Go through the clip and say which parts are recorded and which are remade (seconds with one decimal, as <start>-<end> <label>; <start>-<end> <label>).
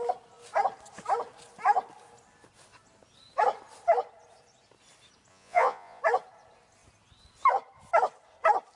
0.0-5.3 recorded; 5.3-6.0 remade; 6.0-8.8 recorded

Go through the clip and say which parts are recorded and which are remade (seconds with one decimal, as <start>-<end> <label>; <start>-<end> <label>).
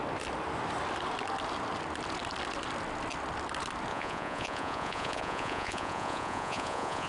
0.0-3.9 recorded; 3.9-7.1 remade